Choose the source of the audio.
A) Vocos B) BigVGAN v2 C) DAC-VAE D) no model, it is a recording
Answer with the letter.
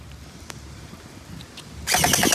B